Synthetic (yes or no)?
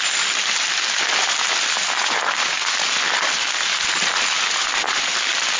no